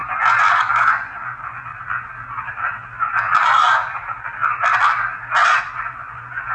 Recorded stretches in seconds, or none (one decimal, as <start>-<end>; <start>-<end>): 0.0-0.7; 1.7-5.6